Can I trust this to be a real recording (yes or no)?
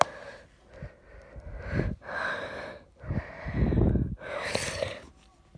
yes